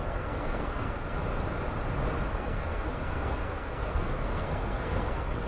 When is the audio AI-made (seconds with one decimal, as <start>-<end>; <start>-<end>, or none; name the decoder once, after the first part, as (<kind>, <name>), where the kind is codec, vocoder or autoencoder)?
0.0-1.2 (codec, SNAC); 2.3-5.5